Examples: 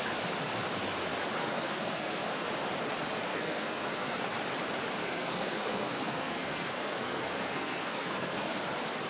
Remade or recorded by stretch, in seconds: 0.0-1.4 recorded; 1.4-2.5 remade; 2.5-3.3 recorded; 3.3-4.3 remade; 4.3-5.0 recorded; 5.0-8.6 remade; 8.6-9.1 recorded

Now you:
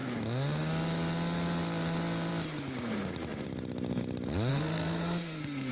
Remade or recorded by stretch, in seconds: 0.0-4.5 recorded; 4.5-5.7 remade

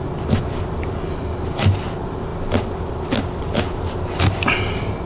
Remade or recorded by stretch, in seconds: 0.0-5.1 recorded

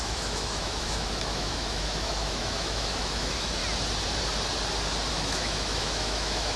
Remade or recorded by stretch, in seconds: 0.0-3.6 remade; 3.6-5.1 recorded; 5.1-6.6 remade

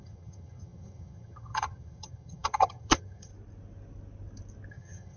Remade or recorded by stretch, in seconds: 0.0-3.3 remade; 3.3-4.7 recorded; 4.7-5.2 remade